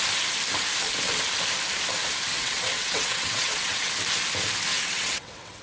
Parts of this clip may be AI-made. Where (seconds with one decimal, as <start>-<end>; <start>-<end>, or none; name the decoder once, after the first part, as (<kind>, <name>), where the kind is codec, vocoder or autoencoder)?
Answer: 2.3-3.9 (vocoder, WaveNeXt); 4.7-5.6